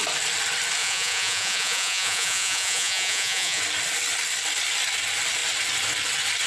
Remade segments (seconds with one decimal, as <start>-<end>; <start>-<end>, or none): 0.8-3.6